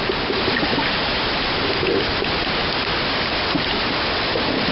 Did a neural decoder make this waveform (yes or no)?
no